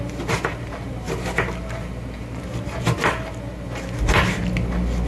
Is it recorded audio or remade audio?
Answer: recorded